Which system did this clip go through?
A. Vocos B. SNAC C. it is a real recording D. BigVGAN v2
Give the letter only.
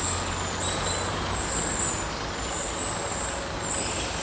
C